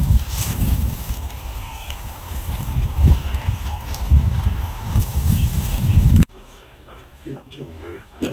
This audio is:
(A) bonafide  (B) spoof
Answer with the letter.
B